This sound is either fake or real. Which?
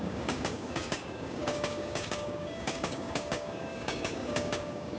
fake